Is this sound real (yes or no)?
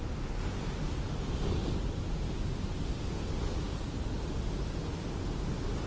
yes